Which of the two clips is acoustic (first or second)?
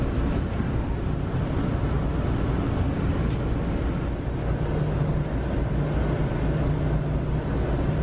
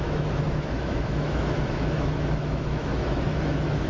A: first